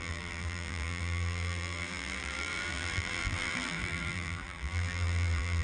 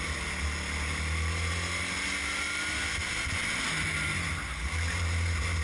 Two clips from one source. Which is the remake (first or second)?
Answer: first